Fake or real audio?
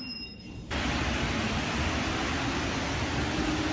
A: real